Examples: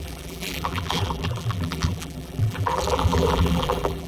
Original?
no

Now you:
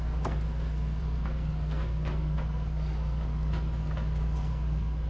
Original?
no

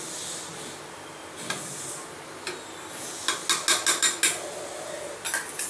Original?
yes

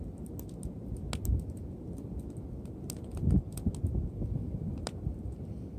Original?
yes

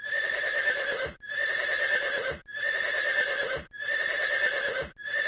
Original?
yes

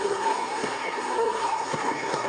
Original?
no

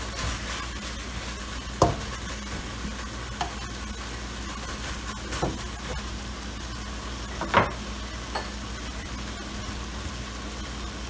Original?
yes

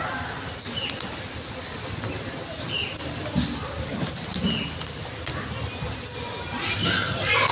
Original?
yes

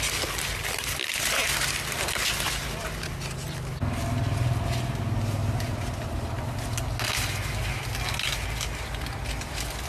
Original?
yes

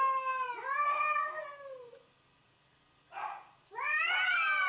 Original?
yes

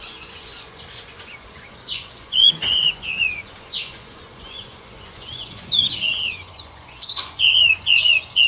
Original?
no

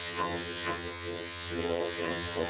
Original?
no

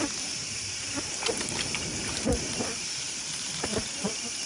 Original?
no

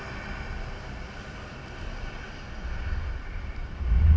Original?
yes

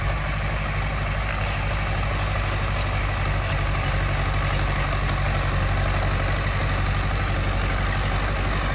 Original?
yes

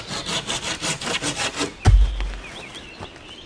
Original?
yes